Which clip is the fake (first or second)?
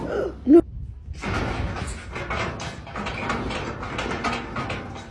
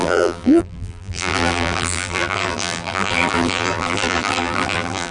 second